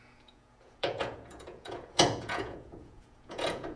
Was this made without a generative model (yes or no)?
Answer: no